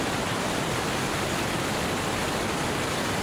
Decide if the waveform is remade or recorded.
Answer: recorded